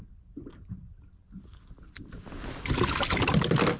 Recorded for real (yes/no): yes